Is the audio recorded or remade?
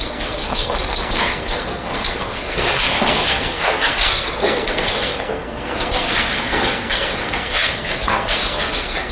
remade